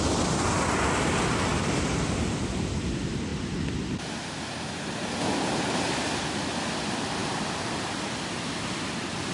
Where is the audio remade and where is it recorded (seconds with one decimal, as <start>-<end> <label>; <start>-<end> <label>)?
0.0-1.5 recorded; 1.5-2.0 remade; 2.0-7.2 recorded; 7.2-8.1 remade; 8.1-9.3 recorded